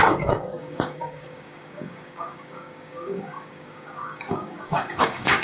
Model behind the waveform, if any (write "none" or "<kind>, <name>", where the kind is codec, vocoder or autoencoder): codec, DAC